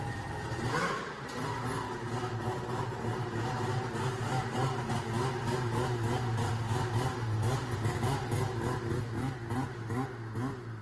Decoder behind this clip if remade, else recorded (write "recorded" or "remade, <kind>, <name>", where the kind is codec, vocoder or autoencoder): recorded